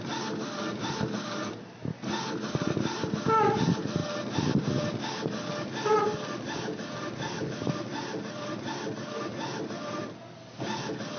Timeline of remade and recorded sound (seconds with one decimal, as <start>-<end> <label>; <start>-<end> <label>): 0.0-11.2 recorded